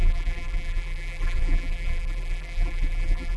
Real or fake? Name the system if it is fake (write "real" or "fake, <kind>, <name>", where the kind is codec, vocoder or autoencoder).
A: fake, vocoder, BigVGAN v2